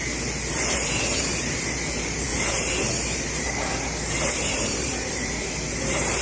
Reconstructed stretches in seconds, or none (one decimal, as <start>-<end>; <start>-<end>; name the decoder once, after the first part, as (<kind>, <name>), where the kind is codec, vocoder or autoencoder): 0.5-2.3 (vocoder, BigVGAN v2); 2.9-3.7; 4.3-6.2

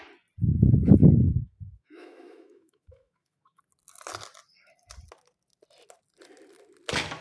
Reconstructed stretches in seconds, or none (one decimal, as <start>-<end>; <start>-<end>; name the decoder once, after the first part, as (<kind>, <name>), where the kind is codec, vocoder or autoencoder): 1.0-3.6 (autoencoder, DAC-VAE)

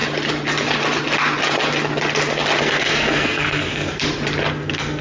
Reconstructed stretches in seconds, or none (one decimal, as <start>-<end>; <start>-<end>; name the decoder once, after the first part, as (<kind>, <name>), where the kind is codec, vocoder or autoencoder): 2.6-4.0 (codec, SNAC); 4.5-5.0